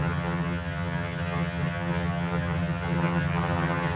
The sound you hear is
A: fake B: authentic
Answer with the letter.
A